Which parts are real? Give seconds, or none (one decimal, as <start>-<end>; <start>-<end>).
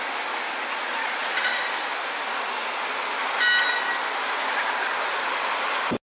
0.0-6.1